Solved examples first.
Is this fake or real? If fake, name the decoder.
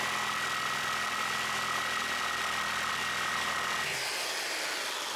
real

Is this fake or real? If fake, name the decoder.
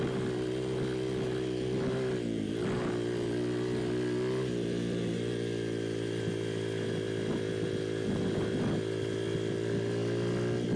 real